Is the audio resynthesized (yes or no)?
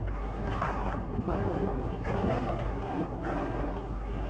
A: yes